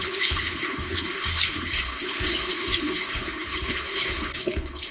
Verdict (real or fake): fake